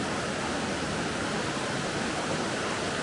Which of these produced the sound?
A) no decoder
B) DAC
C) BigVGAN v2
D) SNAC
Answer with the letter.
A